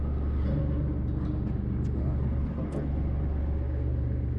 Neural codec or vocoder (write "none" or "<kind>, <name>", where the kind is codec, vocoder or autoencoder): none